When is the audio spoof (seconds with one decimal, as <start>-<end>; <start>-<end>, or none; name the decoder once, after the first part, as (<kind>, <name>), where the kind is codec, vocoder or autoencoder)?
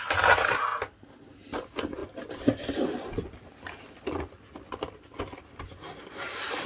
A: none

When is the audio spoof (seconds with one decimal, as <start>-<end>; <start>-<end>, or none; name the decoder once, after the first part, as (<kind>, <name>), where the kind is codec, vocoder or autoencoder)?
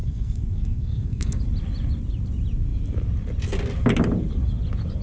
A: 0.0-1.4 (codec, SNAC)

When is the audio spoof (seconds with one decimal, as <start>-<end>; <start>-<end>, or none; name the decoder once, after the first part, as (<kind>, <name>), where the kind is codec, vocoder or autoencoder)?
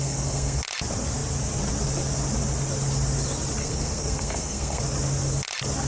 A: 0.0-0.6 (codec, SNAC); 3.6-4.8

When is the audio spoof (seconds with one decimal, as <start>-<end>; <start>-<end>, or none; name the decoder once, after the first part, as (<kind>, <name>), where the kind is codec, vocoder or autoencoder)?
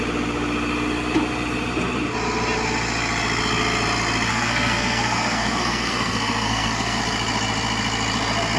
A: 4.3-7.0 (codec, SNAC)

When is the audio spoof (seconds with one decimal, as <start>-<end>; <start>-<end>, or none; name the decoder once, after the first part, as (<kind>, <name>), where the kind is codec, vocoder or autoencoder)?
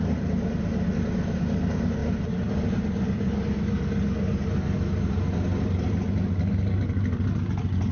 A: none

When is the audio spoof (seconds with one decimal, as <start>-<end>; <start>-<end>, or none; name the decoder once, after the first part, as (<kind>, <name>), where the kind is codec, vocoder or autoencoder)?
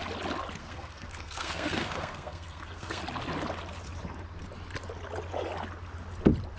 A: 0.6-3.0 (codec, SNAC)